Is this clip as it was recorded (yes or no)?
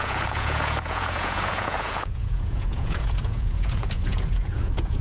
no